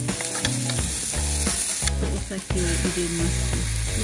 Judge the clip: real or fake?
real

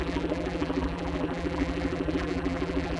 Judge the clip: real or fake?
fake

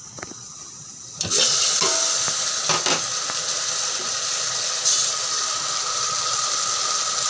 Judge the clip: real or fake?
real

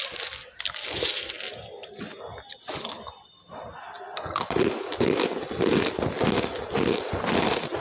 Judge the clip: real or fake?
real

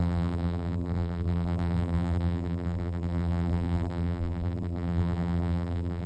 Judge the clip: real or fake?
fake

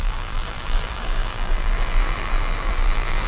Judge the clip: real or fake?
fake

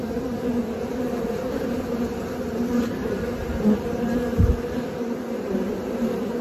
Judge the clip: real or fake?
fake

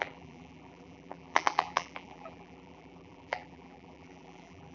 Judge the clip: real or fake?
fake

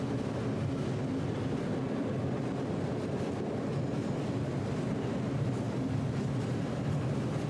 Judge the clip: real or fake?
real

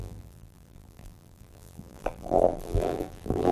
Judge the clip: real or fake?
fake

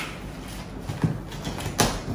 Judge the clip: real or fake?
real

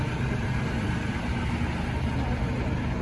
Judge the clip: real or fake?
real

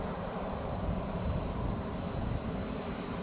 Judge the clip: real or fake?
fake